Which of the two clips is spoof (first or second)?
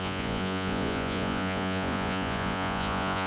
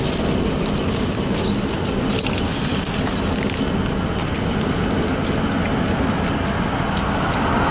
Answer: first